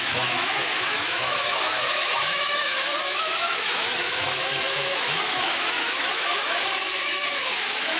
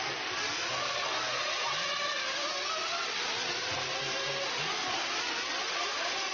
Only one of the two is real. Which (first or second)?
second